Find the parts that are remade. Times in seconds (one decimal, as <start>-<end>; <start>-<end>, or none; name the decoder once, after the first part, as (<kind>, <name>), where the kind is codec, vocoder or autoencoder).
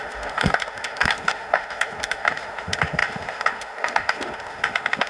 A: 0.0-5.1 (autoencoder, DAC-VAE)